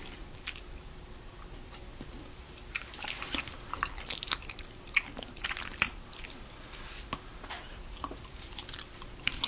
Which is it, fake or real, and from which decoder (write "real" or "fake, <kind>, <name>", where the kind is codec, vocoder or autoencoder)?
fake, vocoder, BigVGAN v2